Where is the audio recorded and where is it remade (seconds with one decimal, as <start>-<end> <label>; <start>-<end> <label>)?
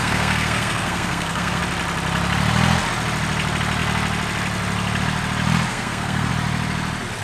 0.0-1.6 remade; 1.6-5.7 recorded; 5.7-6.3 remade; 6.3-7.2 recorded